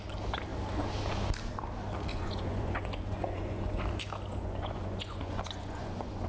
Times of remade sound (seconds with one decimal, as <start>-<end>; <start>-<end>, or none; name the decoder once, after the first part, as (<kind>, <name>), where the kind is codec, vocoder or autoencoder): 2.1-3.8 (vocoder, Vocos); 4.3-6.3